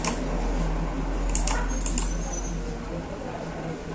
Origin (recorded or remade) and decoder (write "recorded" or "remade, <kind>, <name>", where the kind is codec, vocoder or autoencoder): recorded